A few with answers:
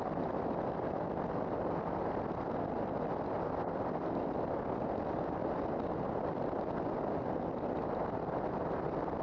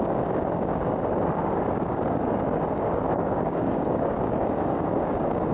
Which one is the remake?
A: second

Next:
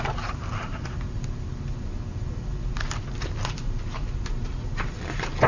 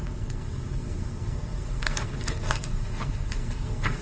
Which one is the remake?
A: second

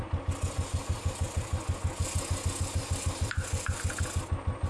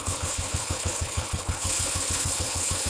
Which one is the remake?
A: second